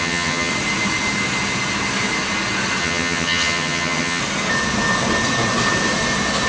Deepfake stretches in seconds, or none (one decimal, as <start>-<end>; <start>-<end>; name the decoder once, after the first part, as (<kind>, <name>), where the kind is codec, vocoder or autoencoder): 0.0-0.5 (vocoder, HiFi-GAN); 2.8-4.2